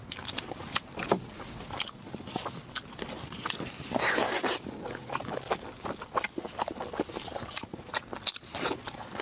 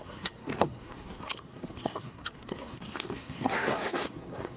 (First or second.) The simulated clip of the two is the second